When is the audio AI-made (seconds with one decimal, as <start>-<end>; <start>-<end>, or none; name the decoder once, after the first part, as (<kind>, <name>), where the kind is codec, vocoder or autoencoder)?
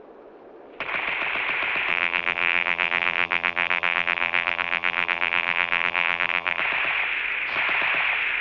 1.9-6.6 (vocoder, BigVGAN v2)